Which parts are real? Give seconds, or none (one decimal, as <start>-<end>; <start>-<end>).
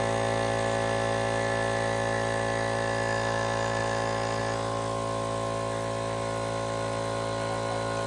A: 0.0-8.1